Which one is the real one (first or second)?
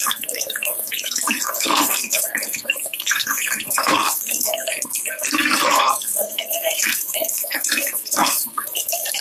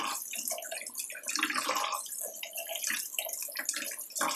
second